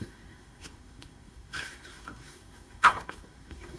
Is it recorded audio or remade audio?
remade